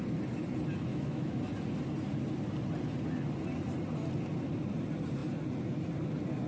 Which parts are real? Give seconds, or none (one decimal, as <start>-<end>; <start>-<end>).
0.0-0.9; 1.4-6.5